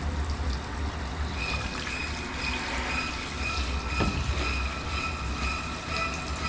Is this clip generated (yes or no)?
no